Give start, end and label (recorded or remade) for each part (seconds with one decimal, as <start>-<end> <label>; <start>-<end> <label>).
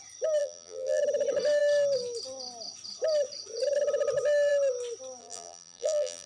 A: 0.0-0.4 recorded; 0.4-1.0 remade; 1.0-5.2 recorded; 5.2-6.3 remade